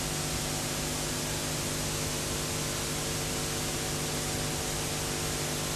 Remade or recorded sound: recorded